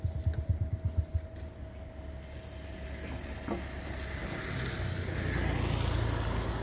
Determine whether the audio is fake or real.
real